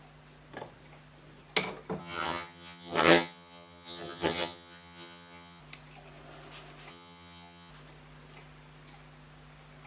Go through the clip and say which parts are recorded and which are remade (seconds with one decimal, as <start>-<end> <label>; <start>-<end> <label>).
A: 0.0-2.0 recorded; 2.0-5.6 remade; 5.6-6.9 recorded; 6.9-7.7 remade; 7.7-9.9 recorded